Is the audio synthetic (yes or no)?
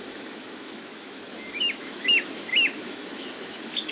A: yes